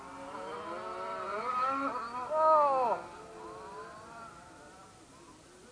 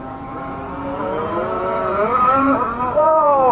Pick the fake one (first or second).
second